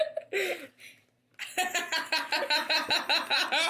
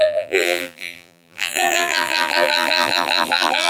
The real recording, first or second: first